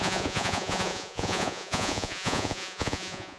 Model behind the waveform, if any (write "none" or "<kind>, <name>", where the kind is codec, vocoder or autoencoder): vocoder, Vocos